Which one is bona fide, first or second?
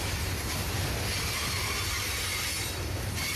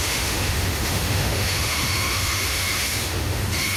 first